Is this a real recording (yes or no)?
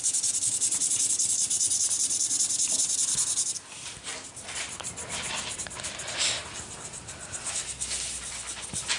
no